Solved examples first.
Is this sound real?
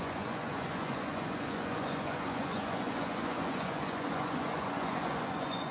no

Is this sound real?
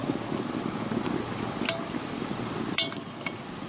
yes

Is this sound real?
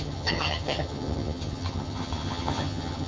no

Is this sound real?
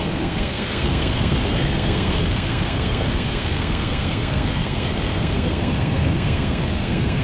no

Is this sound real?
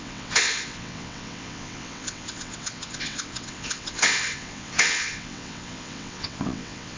no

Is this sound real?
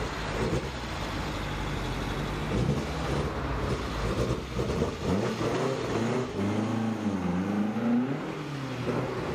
yes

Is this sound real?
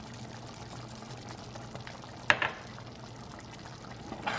yes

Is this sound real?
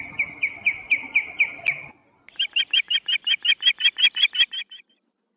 yes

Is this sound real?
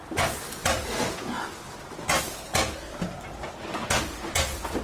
yes